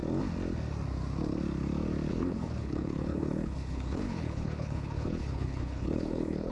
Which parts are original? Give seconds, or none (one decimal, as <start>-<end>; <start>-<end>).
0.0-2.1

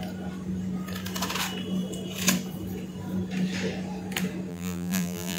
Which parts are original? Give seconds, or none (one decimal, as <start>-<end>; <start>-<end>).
0.0-4.5

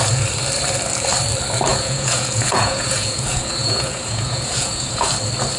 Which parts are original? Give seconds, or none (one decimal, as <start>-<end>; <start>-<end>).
0.0-1.7; 5.1-5.6

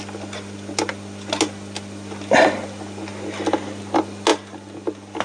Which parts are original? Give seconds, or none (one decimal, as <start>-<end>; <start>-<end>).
0.0-5.2

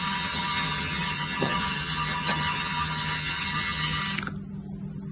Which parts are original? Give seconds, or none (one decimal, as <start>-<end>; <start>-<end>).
4.0-5.1

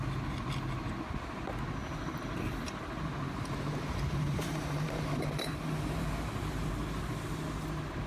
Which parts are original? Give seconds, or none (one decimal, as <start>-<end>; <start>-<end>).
0.0-1.8; 6.7-8.1